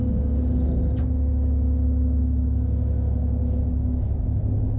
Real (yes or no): yes